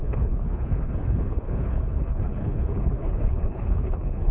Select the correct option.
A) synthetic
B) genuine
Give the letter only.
A